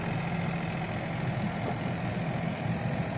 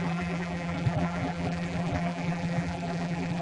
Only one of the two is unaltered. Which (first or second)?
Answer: first